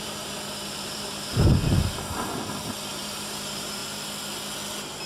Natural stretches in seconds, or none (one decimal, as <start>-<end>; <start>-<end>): 1.6-2.9; 3.8-5.1